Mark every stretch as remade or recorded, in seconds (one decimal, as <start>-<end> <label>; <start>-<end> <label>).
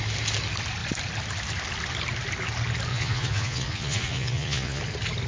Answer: 0.0-2.9 recorded; 2.9-4.8 remade; 4.8-5.3 recorded